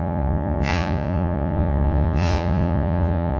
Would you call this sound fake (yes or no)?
yes